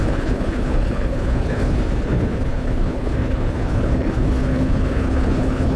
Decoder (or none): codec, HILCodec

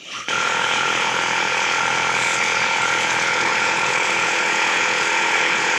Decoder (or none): codec, HILCodec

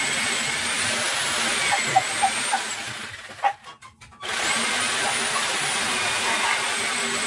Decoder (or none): none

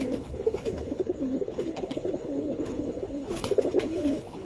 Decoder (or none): codec, HILCodec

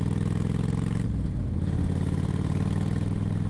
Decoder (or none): none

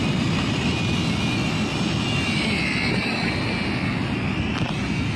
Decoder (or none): none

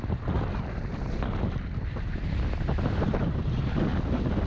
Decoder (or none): none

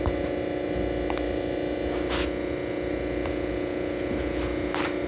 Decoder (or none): none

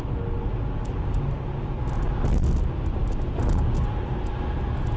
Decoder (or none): none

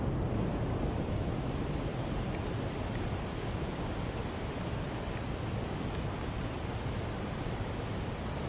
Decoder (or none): none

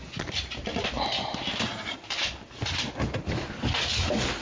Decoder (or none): none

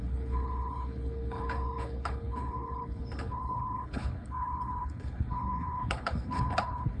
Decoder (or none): codec, HILCodec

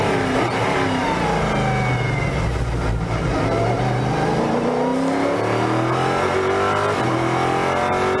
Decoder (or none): none